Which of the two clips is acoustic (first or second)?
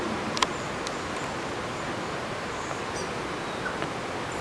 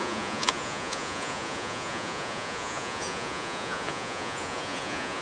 first